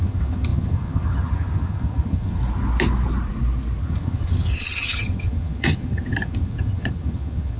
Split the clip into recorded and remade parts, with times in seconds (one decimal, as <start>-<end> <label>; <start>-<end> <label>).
0.0-2.4 remade; 2.4-3.8 recorded; 3.8-7.6 remade